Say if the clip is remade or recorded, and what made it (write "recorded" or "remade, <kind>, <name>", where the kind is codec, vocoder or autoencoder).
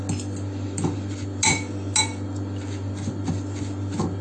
recorded